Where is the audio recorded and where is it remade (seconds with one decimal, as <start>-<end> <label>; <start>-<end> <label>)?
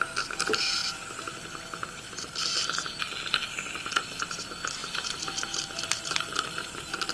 0.0-4.8 recorded; 4.8-7.1 remade